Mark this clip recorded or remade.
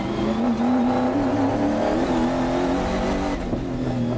recorded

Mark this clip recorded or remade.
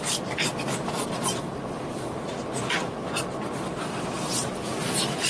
recorded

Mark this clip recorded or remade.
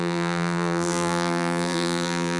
remade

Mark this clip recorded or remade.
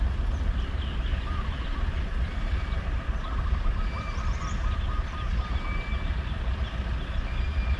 recorded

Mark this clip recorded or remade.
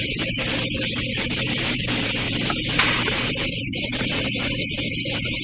remade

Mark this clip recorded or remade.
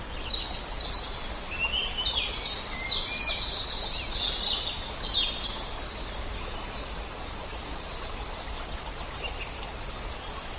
recorded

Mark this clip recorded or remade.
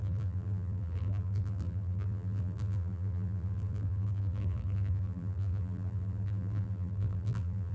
remade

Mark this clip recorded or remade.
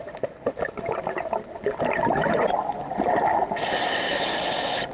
recorded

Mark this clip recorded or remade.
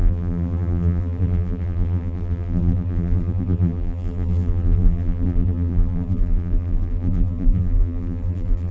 remade